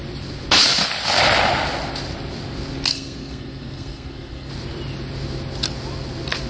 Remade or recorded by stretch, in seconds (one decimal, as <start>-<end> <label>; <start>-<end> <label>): 0.0-2.9 recorded; 2.9-4.5 remade; 4.5-6.5 recorded